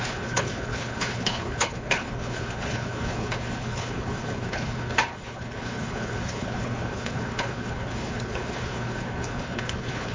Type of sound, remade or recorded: remade